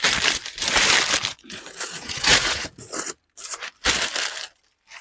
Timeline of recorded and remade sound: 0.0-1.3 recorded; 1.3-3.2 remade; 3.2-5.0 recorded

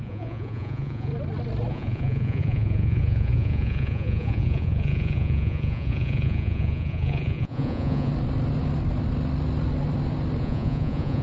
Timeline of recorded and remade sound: 0.0-1.1 remade; 1.1-1.7 recorded; 1.7-8.1 remade; 8.1-10.4 recorded; 10.4-11.2 remade

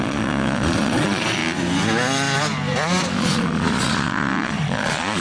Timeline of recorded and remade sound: 0.0-1.4 remade; 1.4-3.2 recorded; 3.2-5.2 remade

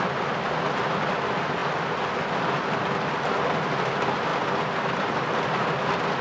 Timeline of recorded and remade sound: 0.0-6.2 recorded

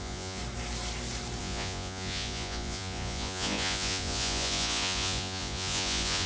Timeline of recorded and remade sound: 0.0-0.4 remade; 0.4-1.4 recorded; 1.4-6.3 remade